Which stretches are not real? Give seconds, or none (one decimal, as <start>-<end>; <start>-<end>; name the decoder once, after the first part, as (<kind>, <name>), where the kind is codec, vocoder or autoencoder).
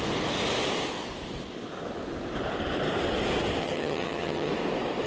3.6-4.5 (vocoder, HiFi-GAN)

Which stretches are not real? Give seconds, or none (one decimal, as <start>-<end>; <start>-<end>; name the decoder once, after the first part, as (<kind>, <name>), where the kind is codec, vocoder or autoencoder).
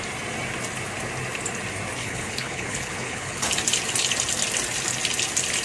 2.0-3.5 (codec, HILCodec)